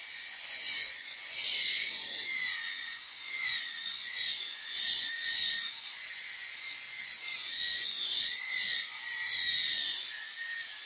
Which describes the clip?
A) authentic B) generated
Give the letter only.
B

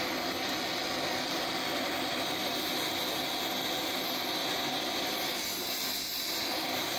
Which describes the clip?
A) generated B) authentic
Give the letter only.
B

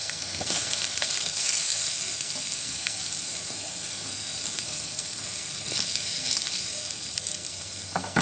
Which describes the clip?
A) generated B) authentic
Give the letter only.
A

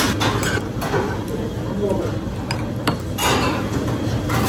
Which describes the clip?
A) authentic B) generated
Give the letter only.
A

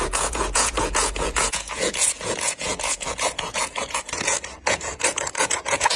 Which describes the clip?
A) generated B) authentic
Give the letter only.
A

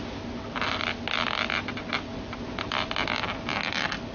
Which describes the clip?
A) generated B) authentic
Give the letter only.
B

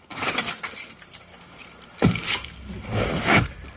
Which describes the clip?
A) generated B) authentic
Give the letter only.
B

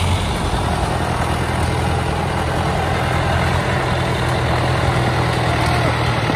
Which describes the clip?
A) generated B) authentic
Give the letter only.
B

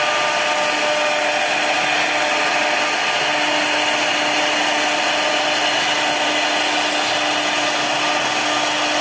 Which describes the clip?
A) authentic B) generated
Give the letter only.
A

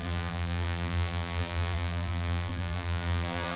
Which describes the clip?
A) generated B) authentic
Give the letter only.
A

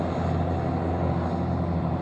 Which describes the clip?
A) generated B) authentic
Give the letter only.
B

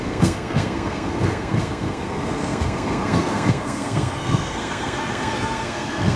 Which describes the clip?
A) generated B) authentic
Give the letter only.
A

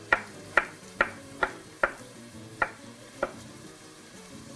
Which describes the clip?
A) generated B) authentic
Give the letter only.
A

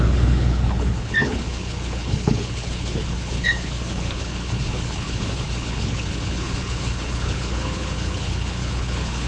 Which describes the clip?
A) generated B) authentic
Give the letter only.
A